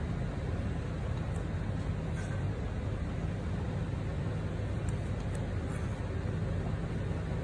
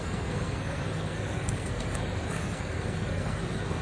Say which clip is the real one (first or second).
first